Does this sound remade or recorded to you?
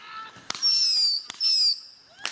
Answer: recorded